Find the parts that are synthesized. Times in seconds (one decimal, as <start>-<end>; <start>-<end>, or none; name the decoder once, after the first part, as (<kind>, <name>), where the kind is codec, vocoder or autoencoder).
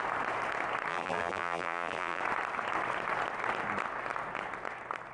0.9-2.2 (vocoder, BigVGAN v2)